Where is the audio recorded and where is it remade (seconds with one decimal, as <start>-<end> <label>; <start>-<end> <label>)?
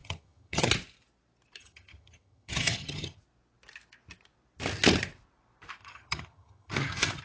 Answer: 0.0-0.7 remade; 0.7-1.6 recorded; 1.6-3.2 remade; 3.2-5.8 recorded; 5.8-7.2 remade